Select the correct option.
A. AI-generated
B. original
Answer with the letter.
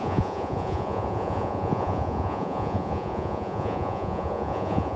A